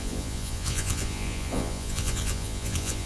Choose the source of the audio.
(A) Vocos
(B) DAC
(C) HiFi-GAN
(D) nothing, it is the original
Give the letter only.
A